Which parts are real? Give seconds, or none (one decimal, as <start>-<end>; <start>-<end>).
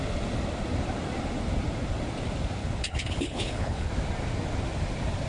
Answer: 0.0-2.6; 3.9-5.3